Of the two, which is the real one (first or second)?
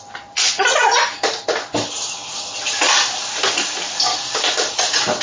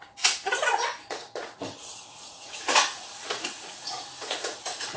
first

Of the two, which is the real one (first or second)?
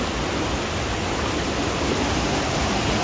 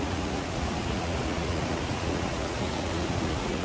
first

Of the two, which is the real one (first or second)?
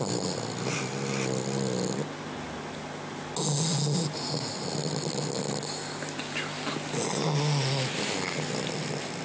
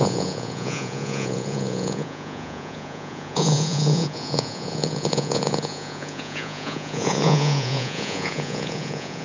first